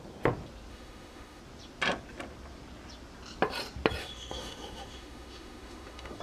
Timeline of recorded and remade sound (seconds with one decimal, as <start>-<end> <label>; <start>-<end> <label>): 0.0-0.7 recorded; 0.7-1.4 remade; 1.4-4.0 recorded; 4.0-6.2 remade